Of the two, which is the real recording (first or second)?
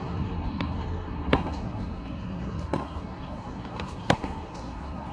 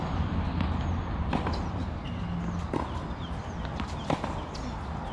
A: second